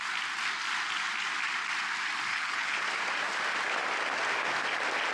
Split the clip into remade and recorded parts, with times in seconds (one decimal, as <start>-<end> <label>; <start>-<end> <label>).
0.0-2.3 recorded; 2.3-2.8 remade; 2.8-5.1 recorded